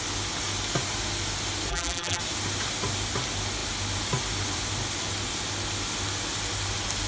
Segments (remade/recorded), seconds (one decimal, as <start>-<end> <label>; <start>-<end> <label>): 0.0-1.7 recorded; 1.7-2.2 remade; 2.2-7.1 recorded